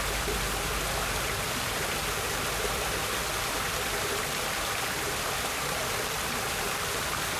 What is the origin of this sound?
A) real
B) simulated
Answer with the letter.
A